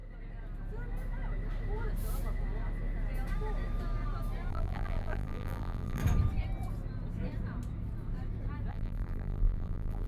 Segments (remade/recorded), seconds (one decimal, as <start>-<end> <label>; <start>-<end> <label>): 0.0-4.5 recorded; 4.5-6.0 remade; 6.0-8.7 recorded; 8.7-10.1 remade